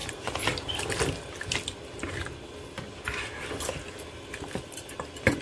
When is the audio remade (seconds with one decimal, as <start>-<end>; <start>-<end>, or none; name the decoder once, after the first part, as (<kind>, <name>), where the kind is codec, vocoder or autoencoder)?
none